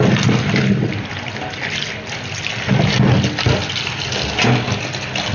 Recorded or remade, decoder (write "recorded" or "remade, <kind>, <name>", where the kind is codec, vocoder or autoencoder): recorded